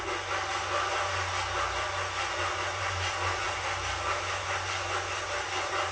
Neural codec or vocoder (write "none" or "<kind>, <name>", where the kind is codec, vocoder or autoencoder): none